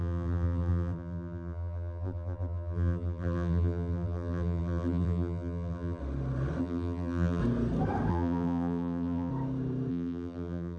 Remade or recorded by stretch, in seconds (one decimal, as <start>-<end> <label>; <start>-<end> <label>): 0.0-6.0 remade; 6.0-6.6 recorded; 6.6-7.4 remade; 7.4-8.1 recorded; 8.1-9.3 remade; 9.3-9.9 recorded; 9.9-10.8 remade